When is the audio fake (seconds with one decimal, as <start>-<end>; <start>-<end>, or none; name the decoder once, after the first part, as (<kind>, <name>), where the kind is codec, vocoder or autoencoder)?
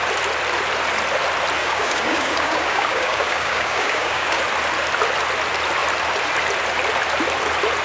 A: 1.6-4.4 (codec, DAC)